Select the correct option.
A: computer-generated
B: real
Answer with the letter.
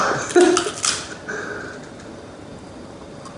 B